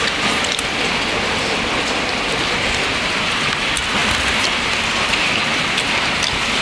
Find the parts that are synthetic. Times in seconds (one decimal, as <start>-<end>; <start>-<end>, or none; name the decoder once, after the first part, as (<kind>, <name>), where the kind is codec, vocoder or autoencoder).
none